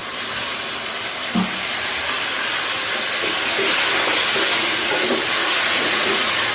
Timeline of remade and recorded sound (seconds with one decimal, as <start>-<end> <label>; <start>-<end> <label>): 0.0-4.5 recorded; 4.5-5.0 remade; 5.0-5.4 recorded; 5.4-6.5 remade